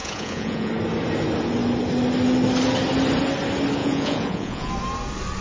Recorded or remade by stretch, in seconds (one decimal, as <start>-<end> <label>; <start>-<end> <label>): 0.0-0.7 remade; 0.7-3.8 recorded; 3.8-4.7 remade; 4.7-5.4 recorded